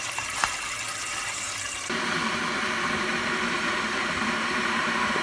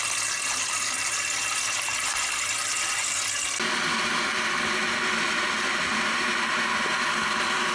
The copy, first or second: first